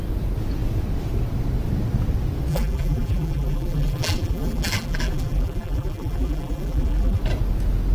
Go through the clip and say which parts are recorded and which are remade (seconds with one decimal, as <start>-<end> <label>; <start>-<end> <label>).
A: 0.0-2.5 recorded; 2.5-7.2 remade; 7.2-7.9 recorded